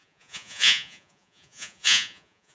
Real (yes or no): no